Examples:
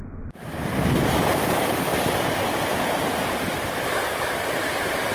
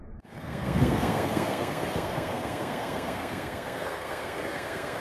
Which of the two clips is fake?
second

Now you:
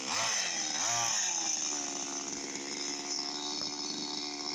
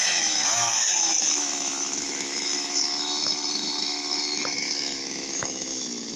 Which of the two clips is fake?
second